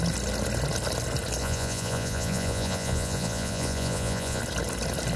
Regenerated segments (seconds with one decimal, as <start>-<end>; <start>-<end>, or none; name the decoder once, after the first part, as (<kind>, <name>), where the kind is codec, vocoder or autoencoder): 1.4-4.4 (vocoder, Vocos)